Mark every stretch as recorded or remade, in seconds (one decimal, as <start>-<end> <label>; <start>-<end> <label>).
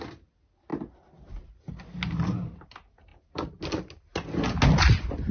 0.0-3.1 recorded; 3.1-3.6 remade; 3.6-5.3 recorded